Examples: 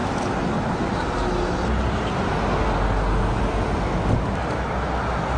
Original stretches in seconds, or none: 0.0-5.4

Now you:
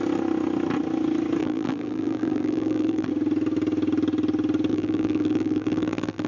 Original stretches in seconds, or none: 0.0-1.4; 3.1-4.7